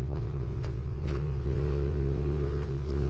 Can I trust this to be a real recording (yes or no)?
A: no